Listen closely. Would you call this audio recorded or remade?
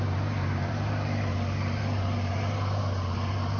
remade